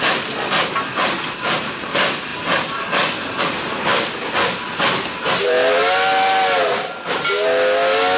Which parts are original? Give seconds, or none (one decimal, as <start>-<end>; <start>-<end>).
2.3-3.4; 5.8-8.2